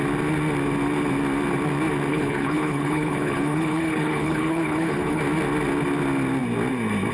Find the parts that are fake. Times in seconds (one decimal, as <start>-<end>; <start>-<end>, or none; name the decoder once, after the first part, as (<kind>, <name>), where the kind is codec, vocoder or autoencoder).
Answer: 2.1-5.2 (codec, HILCodec)